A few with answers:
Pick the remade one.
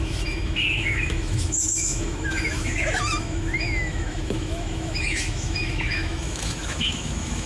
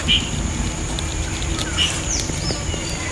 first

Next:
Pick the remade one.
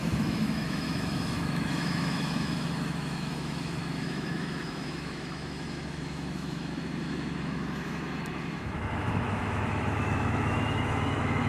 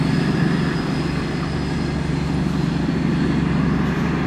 first